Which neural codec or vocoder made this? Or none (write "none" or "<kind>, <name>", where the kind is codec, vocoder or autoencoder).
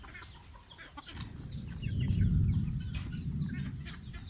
none